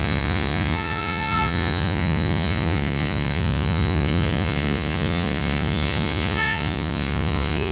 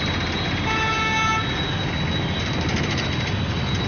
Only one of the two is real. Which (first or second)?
second